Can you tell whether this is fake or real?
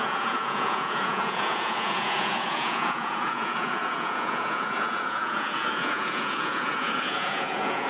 fake